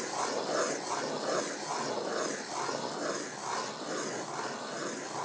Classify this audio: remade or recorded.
recorded